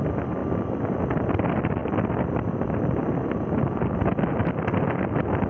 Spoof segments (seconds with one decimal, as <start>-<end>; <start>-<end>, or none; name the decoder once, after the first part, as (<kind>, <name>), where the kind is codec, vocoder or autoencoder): 0.4-1.0 (vocoder, BigVGAN v2); 1.8-5.1